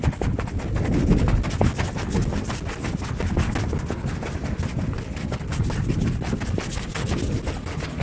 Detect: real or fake real